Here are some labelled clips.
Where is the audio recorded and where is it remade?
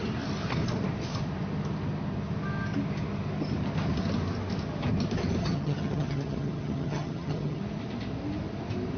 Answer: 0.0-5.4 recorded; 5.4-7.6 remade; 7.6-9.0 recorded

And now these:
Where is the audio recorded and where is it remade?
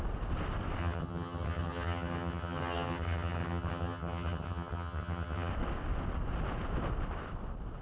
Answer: 0.0-0.8 recorded; 0.8-5.5 remade; 5.5-7.8 recorded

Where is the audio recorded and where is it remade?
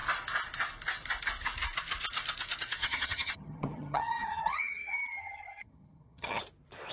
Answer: 0.0-2.8 recorded; 2.8-6.4 remade; 6.4-6.9 recorded